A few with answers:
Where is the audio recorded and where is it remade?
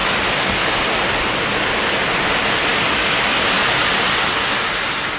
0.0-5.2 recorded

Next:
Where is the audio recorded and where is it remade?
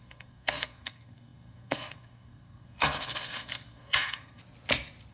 0.0-4.4 remade; 4.4-5.1 recorded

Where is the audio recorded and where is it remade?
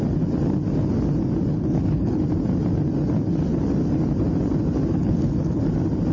0.0-1.5 recorded; 1.5-2.2 remade; 2.2-5.0 recorded; 5.0-5.6 remade; 5.6-6.1 recorded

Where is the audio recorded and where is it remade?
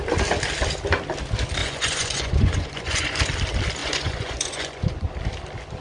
0.0-1.6 recorded; 1.6-3.2 remade; 3.2-3.8 recorded; 3.8-5.1 remade; 5.1-5.8 recorded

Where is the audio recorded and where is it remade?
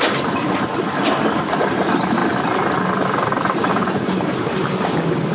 0.0-3.7 recorded; 3.7-4.2 remade; 4.2-5.3 recorded